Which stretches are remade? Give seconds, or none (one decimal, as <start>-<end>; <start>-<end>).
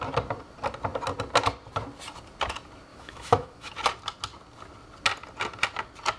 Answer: 2.9-3.7